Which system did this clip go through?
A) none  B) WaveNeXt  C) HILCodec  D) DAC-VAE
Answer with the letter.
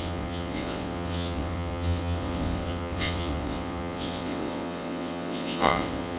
B